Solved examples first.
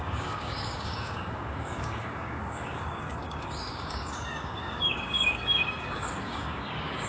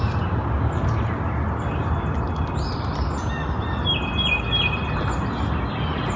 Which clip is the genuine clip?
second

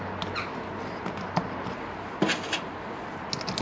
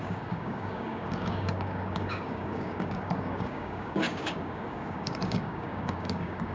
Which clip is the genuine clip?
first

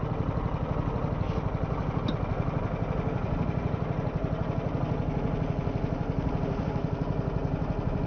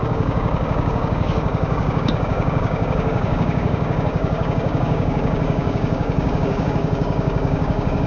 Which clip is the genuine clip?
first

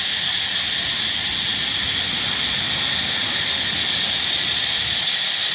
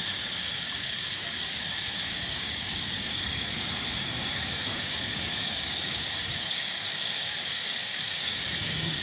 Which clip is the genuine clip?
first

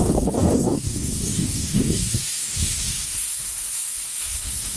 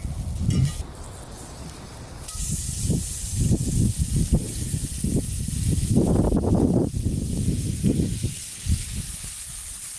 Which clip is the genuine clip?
second